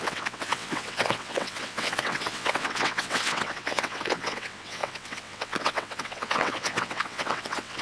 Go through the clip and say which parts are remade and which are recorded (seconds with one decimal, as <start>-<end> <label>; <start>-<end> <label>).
0.0-7.8 remade